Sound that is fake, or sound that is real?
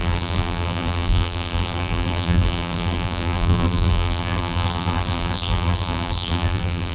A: fake